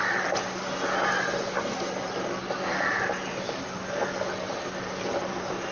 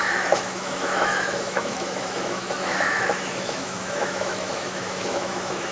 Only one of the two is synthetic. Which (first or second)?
second